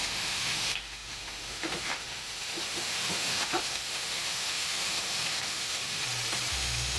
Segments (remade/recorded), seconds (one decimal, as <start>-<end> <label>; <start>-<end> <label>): 0.0-6.0 remade; 6.0-6.5 recorded; 6.5-7.0 remade